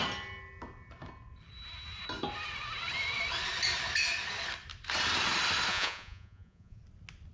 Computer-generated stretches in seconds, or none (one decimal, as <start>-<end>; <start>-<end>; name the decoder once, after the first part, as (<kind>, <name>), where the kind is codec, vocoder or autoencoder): 5.7-6.8 (vocoder, Vocos)